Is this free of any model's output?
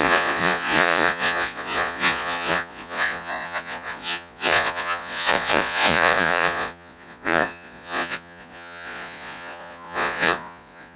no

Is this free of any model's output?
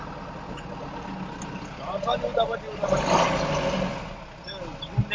yes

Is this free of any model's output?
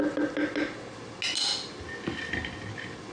yes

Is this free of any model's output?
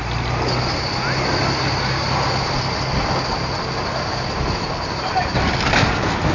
yes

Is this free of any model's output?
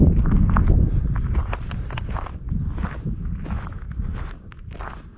yes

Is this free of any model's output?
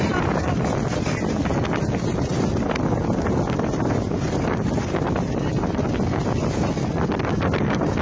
yes